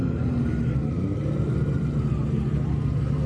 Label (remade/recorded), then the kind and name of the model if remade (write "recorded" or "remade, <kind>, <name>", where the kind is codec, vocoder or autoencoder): recorded